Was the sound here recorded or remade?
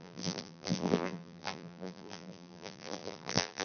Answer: remade